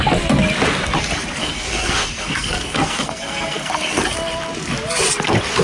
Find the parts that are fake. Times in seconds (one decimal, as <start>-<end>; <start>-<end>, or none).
1.4-4.0